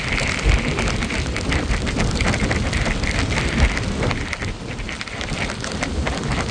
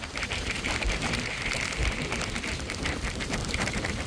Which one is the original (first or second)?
first